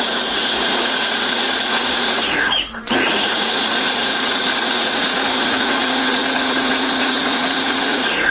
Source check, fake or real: fake